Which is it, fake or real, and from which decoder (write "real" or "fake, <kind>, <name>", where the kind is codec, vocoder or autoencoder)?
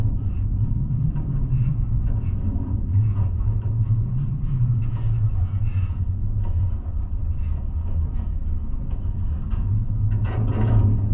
fake, vocoder, Vocos